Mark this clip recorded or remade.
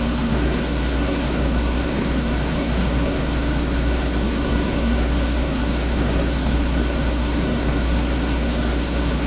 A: remade